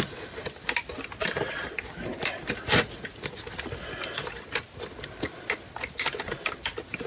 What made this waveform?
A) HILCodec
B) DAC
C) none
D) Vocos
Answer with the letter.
C